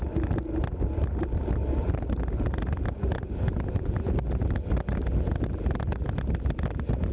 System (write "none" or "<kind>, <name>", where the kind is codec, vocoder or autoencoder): none